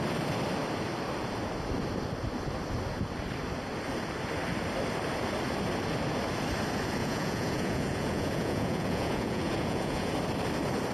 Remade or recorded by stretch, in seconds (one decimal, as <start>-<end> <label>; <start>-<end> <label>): 0.0-7.0 recorded; 7.0-10.1 remade; 10.1-10.9 recorded